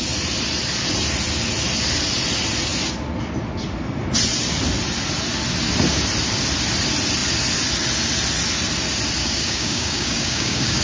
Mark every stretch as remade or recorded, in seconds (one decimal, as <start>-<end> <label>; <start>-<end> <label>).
0.0-9.2 recorded; 9.2-10.8 remade